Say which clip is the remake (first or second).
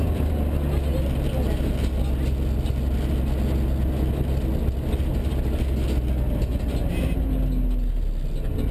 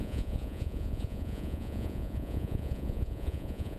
second